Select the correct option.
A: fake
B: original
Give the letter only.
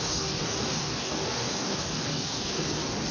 A